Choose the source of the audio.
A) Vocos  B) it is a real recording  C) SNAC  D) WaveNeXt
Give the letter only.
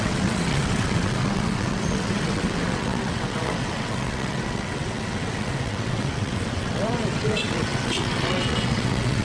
D